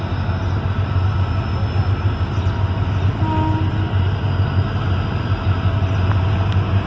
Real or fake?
real